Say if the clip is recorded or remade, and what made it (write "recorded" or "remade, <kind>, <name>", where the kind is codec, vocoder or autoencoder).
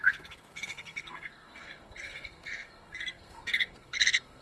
remade, codec, SNAC